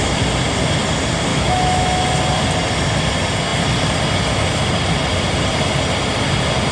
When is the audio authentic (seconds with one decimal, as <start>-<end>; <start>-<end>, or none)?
0.0-1.3; 2.0-6.7